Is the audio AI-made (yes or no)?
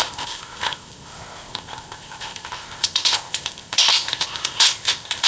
yes